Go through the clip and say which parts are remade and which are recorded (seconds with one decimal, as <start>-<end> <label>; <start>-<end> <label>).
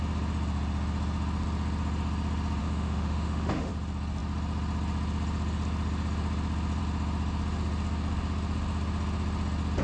0.0-2.6 recorded; 2.6-3.7 remade; 3.7-9.8 recorded